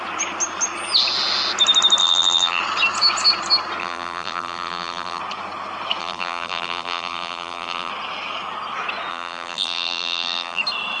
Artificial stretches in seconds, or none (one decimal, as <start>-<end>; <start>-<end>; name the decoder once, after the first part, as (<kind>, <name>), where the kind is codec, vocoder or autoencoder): 2.0-2.6 (vocoder, BigVGAN v2); 3.8-5.2; 6.0-7.9; 9.1-10.6